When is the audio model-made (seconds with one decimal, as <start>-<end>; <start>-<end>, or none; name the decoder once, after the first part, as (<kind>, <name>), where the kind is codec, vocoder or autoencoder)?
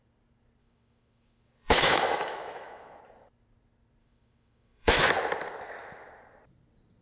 0.6-3.0 (autoencoder, DAC-VAE); 4.0-5.1